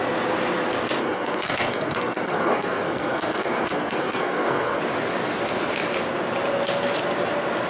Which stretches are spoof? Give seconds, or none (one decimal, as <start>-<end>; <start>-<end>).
1.0-4.8